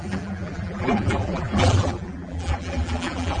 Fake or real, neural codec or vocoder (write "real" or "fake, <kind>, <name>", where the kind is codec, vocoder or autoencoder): fake, vocoder, BigVGAN v2